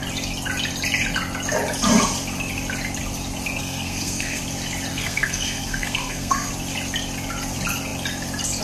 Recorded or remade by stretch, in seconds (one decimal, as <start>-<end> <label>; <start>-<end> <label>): 0.0-3.6 recorded; 3.6-4.4 remade; 4.4-4.9 recorded; 4.9-6.5 remade; 6.5-8.6 recorded